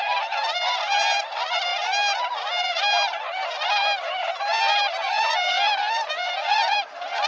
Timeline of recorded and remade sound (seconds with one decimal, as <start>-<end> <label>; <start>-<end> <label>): 0.0-7.3 recorded